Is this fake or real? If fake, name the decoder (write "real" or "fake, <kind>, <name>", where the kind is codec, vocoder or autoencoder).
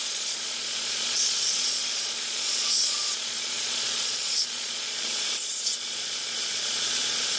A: fake, vocoder, Vocos